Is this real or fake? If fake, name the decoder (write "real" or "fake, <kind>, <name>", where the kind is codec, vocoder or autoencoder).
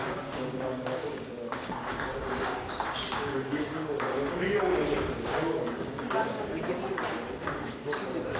fake, codec, DAC